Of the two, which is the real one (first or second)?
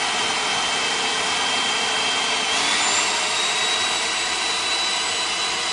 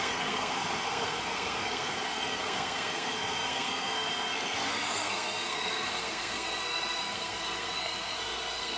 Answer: first